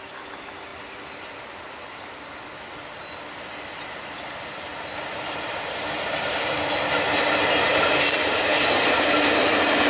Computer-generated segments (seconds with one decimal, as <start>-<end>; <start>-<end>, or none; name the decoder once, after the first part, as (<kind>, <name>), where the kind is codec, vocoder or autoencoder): none